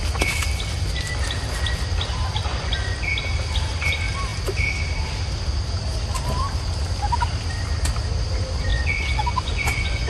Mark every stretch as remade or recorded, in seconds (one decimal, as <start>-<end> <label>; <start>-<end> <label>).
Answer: 0.0-2.5 recorded; 2.5-3.0 remade; 3.0-8.7 recorded; 8.7-10.1 remade